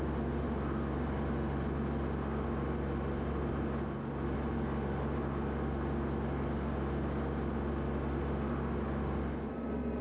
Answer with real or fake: real